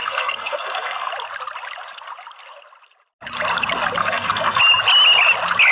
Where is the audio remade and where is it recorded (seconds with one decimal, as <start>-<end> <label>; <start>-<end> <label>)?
0.0-1.1 remade; 1.1-4.0 recorded; 4.0-4.6 remade; 4.6-5.7 recorded